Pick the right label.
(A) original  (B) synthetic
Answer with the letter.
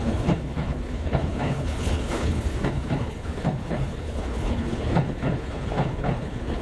B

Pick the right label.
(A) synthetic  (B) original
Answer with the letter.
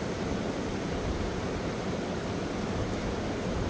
B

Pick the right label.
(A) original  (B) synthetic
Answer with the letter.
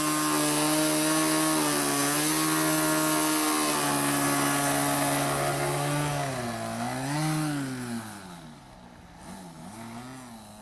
A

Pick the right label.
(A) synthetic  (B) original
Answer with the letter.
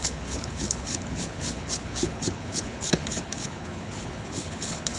A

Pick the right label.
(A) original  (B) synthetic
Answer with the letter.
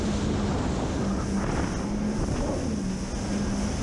A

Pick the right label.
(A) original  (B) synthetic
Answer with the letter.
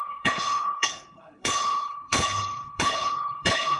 B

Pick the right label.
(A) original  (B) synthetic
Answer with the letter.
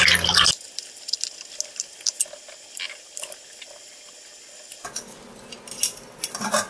A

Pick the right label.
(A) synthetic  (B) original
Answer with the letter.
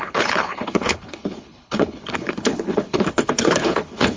A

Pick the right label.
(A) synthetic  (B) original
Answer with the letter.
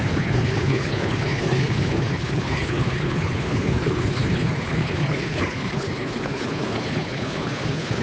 A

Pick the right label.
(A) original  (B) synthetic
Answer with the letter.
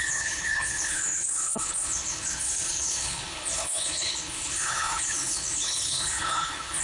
B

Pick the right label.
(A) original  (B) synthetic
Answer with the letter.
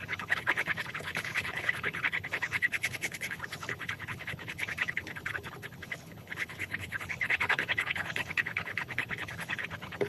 B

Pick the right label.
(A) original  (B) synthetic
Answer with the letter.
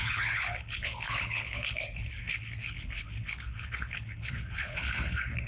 B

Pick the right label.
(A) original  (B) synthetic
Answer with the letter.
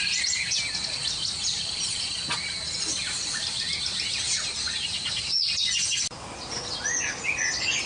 A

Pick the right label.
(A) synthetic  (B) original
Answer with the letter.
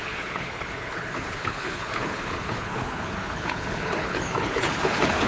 A